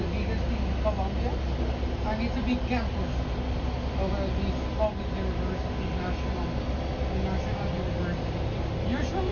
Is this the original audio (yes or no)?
yes